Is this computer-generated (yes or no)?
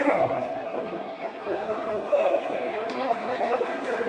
yes